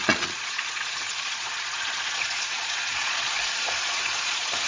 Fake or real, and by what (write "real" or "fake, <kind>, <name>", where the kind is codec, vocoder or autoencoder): fake, vocoder, Vocos